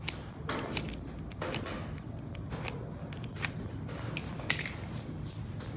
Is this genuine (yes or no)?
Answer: yes